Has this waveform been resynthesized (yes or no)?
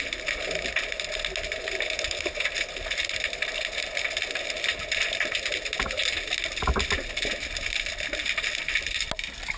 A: no